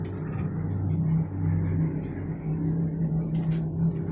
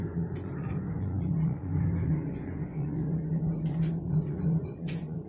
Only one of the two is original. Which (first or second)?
first